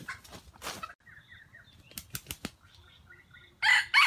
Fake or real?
real